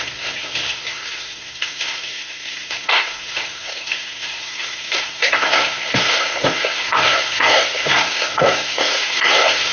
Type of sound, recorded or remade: remade